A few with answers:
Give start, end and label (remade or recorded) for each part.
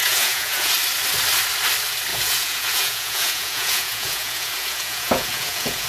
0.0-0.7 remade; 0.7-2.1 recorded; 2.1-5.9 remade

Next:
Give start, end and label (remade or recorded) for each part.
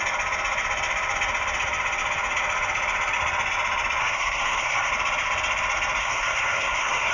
0.0-4.0 recorded; 4.0-4.9 remade; 4.9-6.0 recorded; 6.0-7.1 remade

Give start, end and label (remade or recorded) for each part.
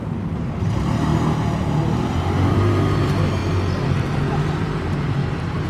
0.0-1.1 remade; 1.1-2.5 recorded; 2.5-3.4 remade; 3.4-4.6 recorded; 4.6-5.2 remade; 5.2-5.7 recorded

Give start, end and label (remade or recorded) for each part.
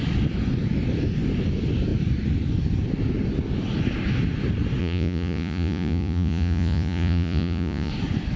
0.0-4.8 recorded; 4.8-7.9 remade; 7.9-8.4 recorded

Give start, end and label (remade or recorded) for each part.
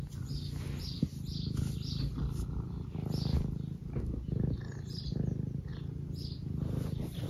0.0-7.3 recorded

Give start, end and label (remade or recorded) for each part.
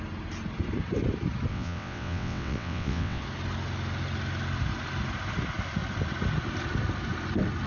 0.0-1.5 recorded; 1.5-3.2 remade; 3.2-7.7 recorded